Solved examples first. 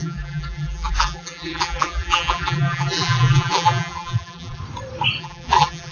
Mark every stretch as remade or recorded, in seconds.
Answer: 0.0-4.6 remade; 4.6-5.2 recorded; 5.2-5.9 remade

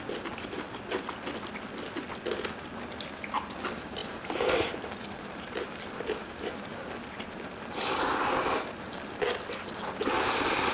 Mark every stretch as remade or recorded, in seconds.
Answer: 0.0-4.0 recorded; 4.0-6.3 remade; 6.3-10.7 recorded

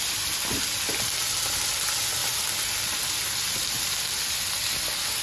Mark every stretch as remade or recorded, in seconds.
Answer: 0.0-2.2 recorded; 2.2-2.8 remade; 2.8-5.2 recorded

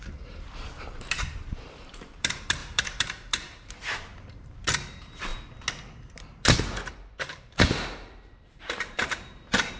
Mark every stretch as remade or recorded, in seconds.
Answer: 0.0-5.3 remade; 5.3-6.9 recorded; 6.9-9.8 remade